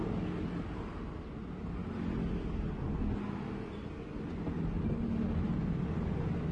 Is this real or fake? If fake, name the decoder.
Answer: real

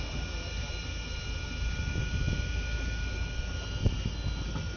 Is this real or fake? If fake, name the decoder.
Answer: real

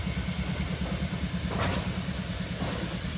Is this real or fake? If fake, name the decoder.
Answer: real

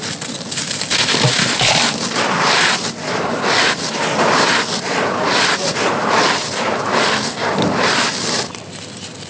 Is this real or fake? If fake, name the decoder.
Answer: fake, vocoder, BigVGAN v2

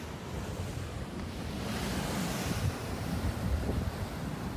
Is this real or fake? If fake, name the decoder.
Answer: real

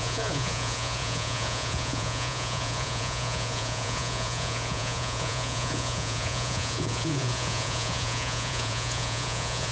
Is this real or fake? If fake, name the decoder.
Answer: fake, vocoder, Vocos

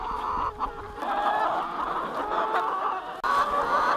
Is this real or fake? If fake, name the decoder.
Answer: real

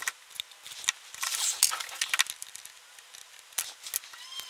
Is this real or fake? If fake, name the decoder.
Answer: real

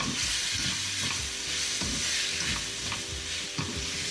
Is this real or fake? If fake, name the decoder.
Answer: real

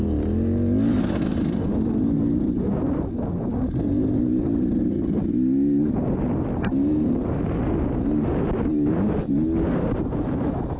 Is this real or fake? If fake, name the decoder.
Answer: real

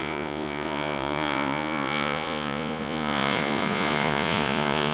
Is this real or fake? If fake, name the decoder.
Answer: fake, vocoder, Vocos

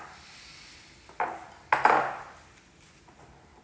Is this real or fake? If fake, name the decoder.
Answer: real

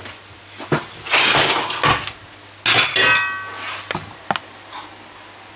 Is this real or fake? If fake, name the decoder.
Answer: real